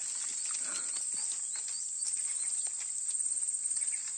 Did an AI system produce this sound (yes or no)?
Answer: no